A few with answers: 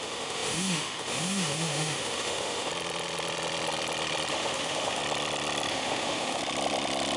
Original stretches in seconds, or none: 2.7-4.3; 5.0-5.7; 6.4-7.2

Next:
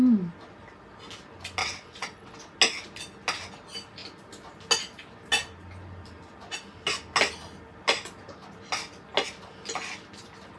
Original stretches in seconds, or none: 0.0-1.6; 2.4-10.6

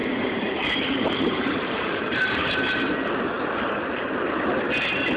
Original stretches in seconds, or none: 2.5-5.2

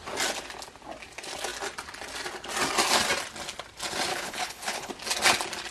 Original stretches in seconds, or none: 0.0-4.1; 4.9-5.7